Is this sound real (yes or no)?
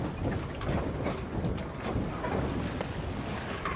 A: yes